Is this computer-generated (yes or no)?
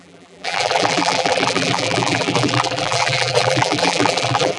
yes